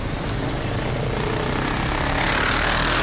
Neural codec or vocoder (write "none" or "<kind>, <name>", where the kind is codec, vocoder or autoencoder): none